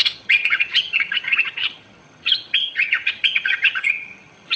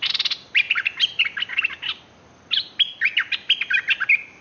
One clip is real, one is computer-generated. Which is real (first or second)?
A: second